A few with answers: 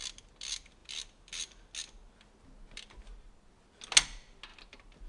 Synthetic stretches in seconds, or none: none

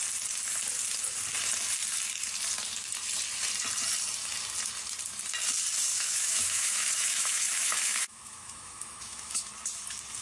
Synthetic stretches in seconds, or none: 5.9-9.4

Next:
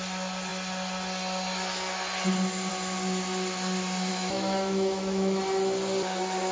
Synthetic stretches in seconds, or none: 4.1-5.4